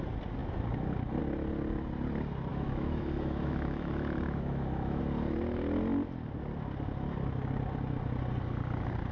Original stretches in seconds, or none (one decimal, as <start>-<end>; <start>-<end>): 0.0-2.5; 5.0-9.1